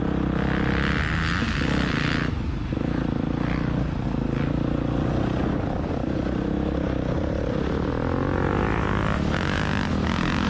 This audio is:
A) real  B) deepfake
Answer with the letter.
A